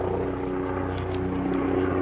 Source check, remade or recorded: recorded